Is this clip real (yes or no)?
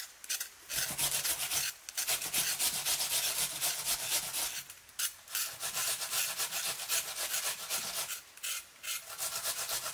yes